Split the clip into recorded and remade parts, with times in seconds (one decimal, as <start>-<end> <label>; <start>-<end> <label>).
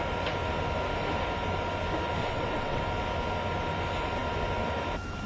0.0-2.2 recorded; 2.2-2.8 remade; 2.8-5.3 recorded